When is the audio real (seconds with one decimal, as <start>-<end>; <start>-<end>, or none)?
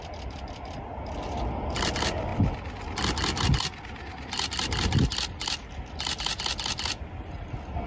0.0-7.9